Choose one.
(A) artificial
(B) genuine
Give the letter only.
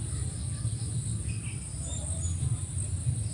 A